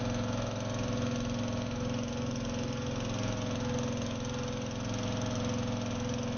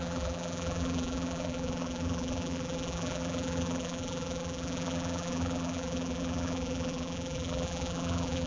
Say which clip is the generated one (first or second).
second